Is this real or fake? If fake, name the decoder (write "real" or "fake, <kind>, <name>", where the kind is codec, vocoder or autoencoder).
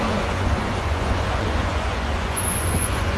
fake, vocoder, Vocos